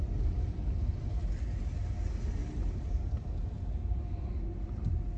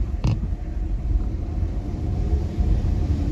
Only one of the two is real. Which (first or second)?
first